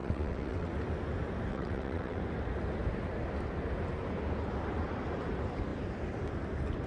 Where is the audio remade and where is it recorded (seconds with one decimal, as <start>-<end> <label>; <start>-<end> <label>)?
0.0-0.7 remade; 0.7-1.5 recorded; 1.5-2.2 remade; 2.2-6.9 recorded